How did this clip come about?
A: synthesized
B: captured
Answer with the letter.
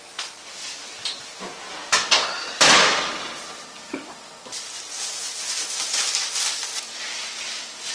B